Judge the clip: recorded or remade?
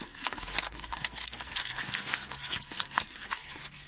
remade